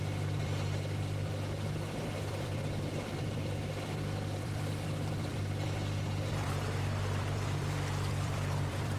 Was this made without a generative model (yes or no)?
no